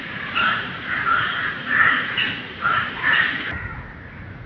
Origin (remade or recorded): remade